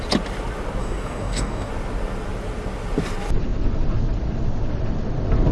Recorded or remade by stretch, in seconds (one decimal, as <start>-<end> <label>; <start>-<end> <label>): 0.0-0.8 recorded; 0.8-1.7 remade; 1.7-5.5 recorded